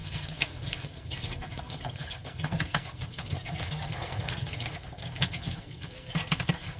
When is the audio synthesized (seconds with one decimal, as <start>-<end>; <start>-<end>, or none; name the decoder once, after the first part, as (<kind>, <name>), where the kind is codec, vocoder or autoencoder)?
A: 0.0-6.8 (codec, SNAC)